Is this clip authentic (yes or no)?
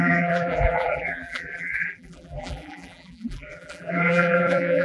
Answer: no